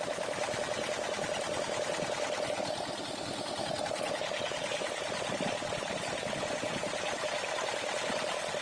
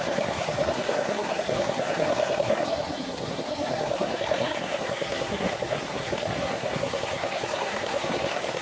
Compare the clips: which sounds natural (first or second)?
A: first